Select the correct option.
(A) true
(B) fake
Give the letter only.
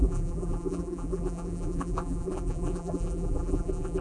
B